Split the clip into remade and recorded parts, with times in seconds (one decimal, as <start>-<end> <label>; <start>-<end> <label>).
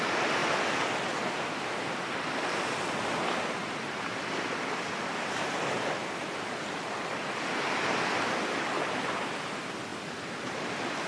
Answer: 0.0-11.1 recorded